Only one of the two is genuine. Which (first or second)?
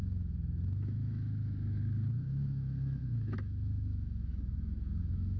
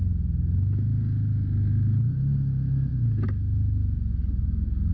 second